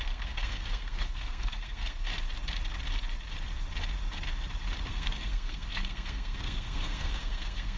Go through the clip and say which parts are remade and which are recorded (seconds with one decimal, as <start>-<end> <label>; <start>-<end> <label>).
0.0-2.1 remade; 2.1-4.9 recorded; 4.9-7.8 remade